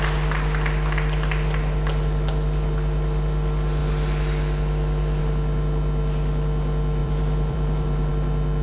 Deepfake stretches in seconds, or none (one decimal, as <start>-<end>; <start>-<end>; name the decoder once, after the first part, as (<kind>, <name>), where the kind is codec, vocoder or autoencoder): 7.0-8.1 (vocoder, BigVGAN v2)